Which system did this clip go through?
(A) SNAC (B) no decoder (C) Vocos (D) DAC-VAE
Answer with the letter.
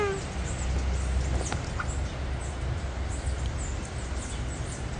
B